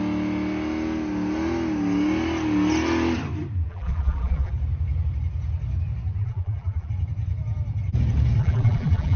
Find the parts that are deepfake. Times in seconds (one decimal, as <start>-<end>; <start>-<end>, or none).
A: 3.7-4.5; 6.2-6.9; 8.4-9.2